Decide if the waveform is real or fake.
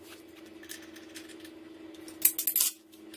real